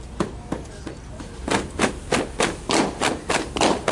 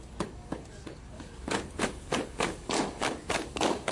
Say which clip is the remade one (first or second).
second